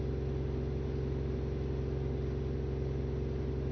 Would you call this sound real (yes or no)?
yes